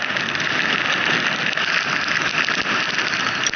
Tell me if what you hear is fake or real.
real